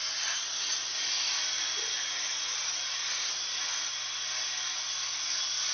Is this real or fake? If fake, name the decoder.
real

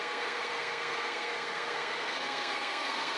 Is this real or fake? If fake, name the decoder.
fake, codec, SNAC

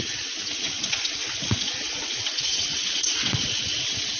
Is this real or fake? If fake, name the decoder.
fake, vocoder, WaveNeXt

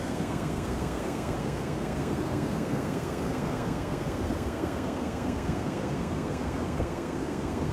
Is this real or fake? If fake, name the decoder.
fake, codec, SNAC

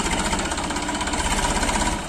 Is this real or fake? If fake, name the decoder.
real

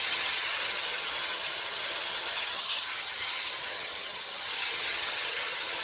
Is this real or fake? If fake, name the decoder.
fake, vocoder, HiFi-GAN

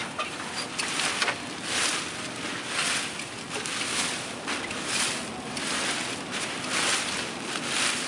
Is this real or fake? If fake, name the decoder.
real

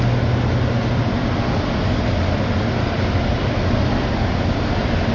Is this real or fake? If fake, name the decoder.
real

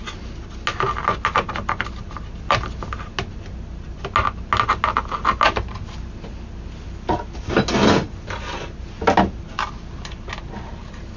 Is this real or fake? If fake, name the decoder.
real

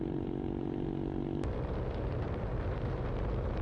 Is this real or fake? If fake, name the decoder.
fake, vocoder, BigVGAN v2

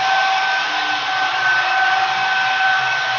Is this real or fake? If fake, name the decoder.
fake, vocoder, BigVGAN v2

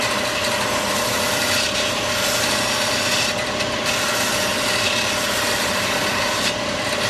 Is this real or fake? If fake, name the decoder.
real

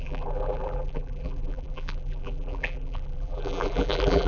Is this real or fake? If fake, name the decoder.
fake, vocoder, BigVGAN v2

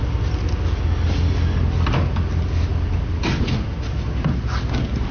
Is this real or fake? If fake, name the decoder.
real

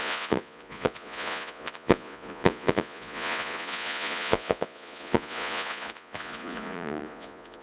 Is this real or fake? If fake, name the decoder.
fake, vocoder, Vocos